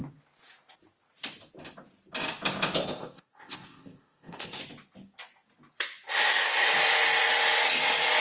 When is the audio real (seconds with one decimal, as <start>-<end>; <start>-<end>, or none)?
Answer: 0.0-2.8; 4.6-8.2